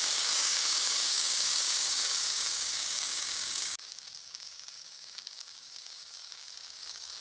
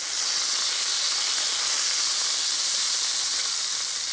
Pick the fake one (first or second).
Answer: first